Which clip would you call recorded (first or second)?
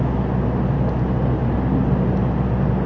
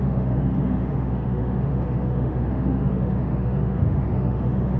first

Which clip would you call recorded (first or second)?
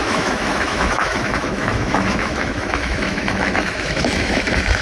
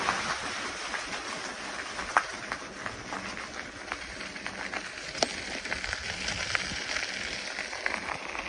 second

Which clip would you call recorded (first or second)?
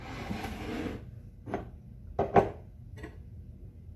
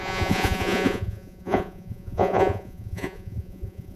first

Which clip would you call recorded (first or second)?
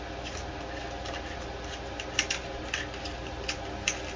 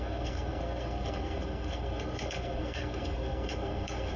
first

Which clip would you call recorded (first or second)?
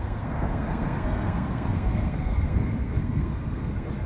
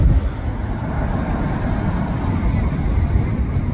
second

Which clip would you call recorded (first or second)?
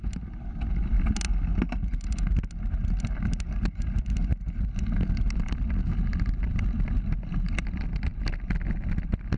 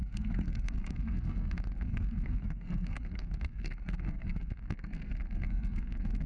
first